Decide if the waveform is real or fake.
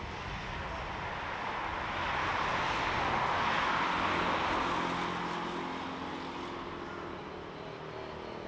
real